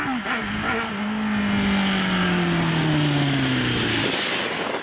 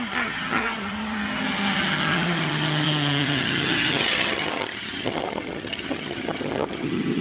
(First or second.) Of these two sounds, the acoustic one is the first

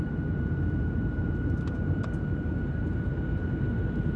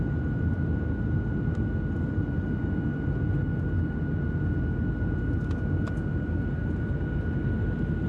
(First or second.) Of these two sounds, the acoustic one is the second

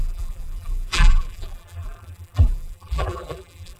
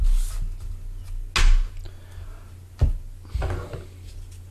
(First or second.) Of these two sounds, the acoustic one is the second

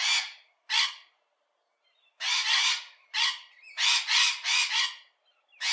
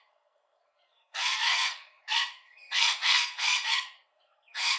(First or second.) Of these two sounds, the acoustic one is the first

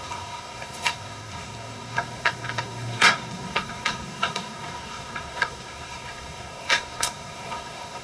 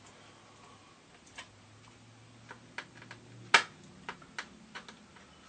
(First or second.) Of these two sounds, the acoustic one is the second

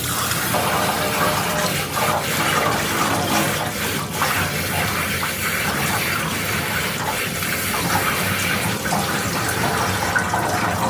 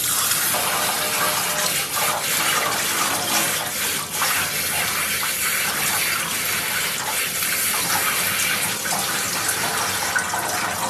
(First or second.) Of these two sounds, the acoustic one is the second